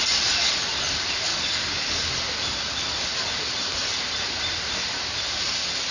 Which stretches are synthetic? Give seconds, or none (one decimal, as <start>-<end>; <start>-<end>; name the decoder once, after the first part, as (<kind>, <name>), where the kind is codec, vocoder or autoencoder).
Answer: 1.3-2.1 (codec, DAC)